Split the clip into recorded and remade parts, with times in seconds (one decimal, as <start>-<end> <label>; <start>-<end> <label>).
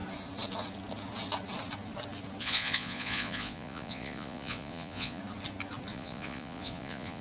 0.0-2.4 recorded; 2.4-5.2 remade; 5.2-5.9 recorded; 5.9-7.2 remade